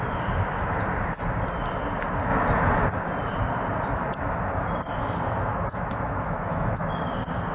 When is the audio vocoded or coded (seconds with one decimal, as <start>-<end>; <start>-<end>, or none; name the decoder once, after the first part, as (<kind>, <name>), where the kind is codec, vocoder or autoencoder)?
5.5-7.0 (autoencoder, DAC-VAE)